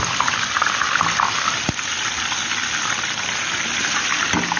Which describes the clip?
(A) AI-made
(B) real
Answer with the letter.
B